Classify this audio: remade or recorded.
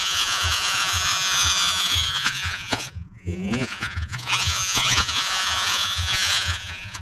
remade